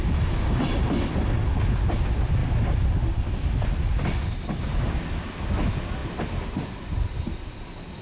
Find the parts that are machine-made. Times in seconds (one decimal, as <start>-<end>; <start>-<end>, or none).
none